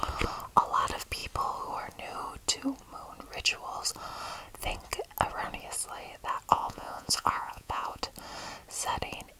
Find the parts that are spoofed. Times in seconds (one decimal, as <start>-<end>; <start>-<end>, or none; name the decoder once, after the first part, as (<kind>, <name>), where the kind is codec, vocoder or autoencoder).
6.5-8.0 (vocoder, Vocos)